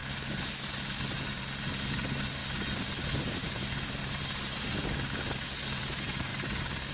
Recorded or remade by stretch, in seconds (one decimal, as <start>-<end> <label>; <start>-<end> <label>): 0.0-1.9 recorded; 1.9-2.4 remade; 2.4-3.0 recorded; 3.0-4.8 remade; 4.8-5.7 recorded; 5.7-6.3 remade; 6.3-6.9 recorded